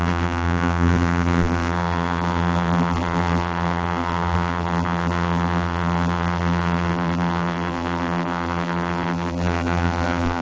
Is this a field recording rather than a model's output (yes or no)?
no